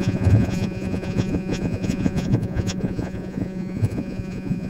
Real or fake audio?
fake